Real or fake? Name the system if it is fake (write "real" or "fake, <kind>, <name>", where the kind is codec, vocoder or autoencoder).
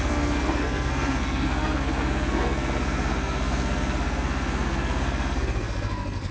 fake, codec, SNAC